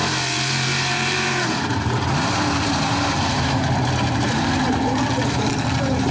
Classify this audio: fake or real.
fake